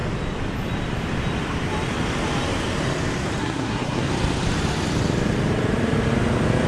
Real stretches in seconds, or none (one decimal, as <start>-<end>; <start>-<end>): 0.0-3.4; 4.1-6.7